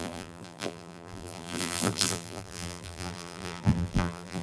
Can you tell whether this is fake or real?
fake